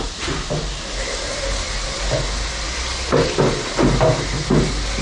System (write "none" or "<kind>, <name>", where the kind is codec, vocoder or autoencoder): none